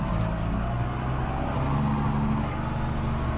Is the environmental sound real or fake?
real